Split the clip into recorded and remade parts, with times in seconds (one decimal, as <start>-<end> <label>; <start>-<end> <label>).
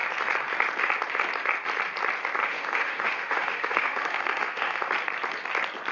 0.0-2.4 recorded; 2.4-4.9 remade; 4.9-5.9 recorded